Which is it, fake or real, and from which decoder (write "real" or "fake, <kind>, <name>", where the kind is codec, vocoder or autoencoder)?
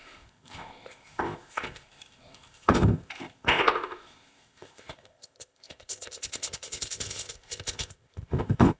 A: fake, codec, ZipCodec